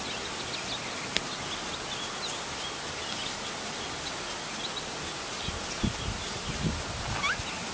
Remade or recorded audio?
recorded